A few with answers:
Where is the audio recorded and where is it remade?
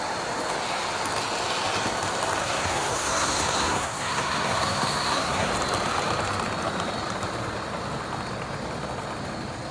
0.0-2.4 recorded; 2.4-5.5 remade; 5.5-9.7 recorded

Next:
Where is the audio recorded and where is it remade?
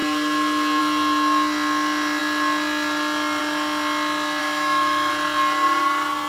0.0-4.4 recorded; 4.4-5.1 remade; 5.1-6.3 recorded